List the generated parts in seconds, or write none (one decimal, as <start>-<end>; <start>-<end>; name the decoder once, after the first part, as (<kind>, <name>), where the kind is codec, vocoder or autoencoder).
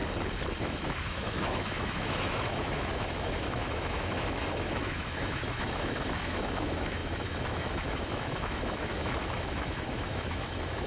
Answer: 0.6-10.9 (autoencoder, DAC-VAE)